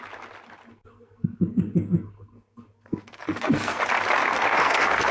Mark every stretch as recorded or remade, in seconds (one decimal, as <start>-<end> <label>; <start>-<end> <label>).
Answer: 0.0-0.7 recorded; 0.7-3.8 remade; 3.8-4.2 recorded; 4.2-5.1 remade